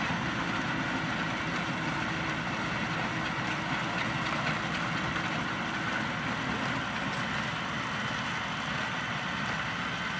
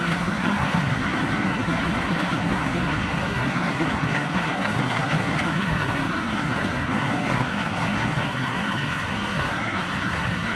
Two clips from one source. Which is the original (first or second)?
first